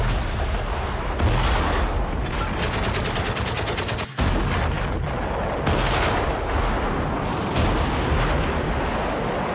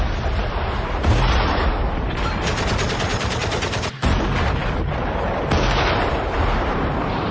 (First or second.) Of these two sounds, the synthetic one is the second